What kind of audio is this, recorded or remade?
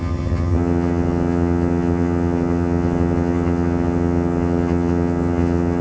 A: remade